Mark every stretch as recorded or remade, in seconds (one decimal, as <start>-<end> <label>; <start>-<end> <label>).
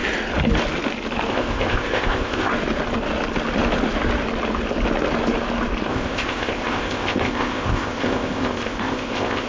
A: 0.0-1.3 recorded; 1.3-2.5 remade; 2.5-5.9 recorded; 5.9-9.5 remade